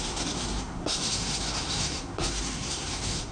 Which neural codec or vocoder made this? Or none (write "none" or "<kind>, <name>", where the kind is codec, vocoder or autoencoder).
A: codec, SNAC